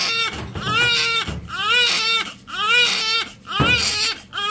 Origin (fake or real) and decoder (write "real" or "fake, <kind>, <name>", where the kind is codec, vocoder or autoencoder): real